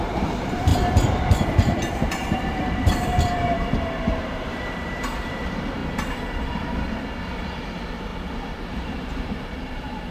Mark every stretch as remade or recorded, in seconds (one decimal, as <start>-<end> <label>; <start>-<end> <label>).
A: 0.0-0.7 remade; 0.7-1.9 recorded; 1.9-5.8 remade; 5.8-7.6 recorded; 7.6-8.1 remade; 8.1-8.6 recorded; 8.6-10.1 remade